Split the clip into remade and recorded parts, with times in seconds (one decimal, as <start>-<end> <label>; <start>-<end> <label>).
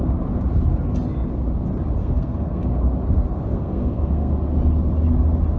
0.0-2.0 recorded; 2.0-2.6 remade; 2.6-3.5 recorded; 3.5-4.3 remade; 4.3-5.6 recorded